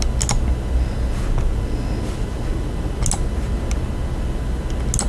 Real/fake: real